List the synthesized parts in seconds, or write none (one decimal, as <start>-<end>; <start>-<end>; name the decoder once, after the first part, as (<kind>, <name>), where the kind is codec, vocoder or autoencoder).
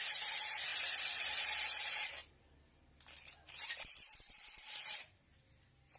none